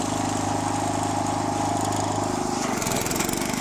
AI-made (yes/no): no